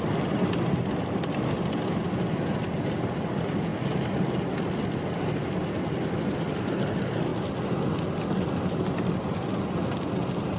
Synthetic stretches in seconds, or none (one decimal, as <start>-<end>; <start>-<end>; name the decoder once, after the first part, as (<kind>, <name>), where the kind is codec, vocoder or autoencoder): none